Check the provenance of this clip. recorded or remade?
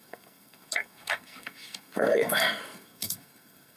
remade